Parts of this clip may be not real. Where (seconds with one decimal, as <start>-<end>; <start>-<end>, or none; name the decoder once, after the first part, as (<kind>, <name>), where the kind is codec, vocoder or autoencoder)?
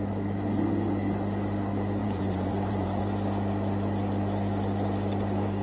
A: 2.0-3.0 (vocoder, Vocos)